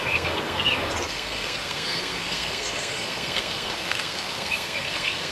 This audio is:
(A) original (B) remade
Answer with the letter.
B